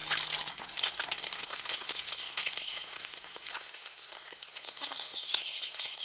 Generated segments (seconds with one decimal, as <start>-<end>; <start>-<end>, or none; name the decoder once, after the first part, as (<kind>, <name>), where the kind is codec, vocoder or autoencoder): 0.5-6.0 (codec, SNAC)